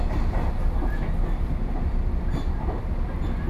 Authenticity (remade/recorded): recorded